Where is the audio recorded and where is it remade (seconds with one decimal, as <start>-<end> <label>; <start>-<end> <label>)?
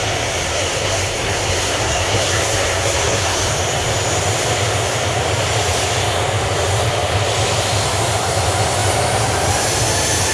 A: 0.0-0.5 recorded; 0.5-3.5 remade; 3.5-10.3 recorded